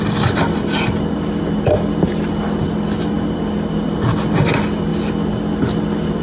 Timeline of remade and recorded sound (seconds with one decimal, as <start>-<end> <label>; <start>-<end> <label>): 0.0-6.2 recorded